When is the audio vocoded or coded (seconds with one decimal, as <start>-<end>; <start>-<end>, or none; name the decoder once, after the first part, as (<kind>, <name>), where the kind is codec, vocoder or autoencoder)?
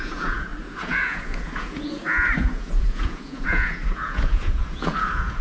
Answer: 0.0-5.4 (vocoder, Vocos)